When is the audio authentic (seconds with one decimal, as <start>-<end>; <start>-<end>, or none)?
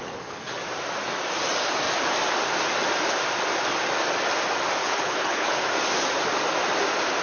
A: 0.6-4.8; 5.6-7.2